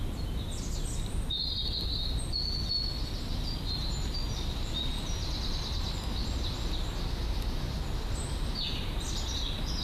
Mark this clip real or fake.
real